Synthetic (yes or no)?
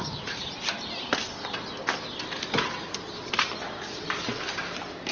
no